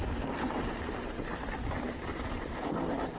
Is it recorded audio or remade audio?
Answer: recorded